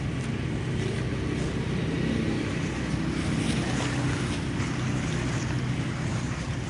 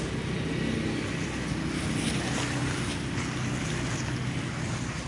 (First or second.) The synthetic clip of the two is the first